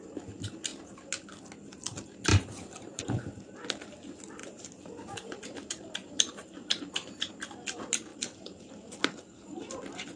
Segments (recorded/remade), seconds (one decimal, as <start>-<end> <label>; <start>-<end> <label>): 0.0-2.3 recorded; 2.3-3.0 remade; 3.0-4.4 recorded; 4.4-7.3 remade; 7.3-8.1 recorded; 8.1-8.6 remade; 8.6-10.2 recorded